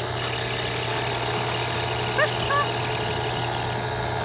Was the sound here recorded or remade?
recorded